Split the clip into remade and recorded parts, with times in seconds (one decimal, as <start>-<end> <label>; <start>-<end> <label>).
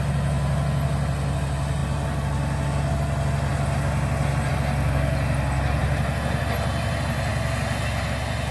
0.0-8.5 recorded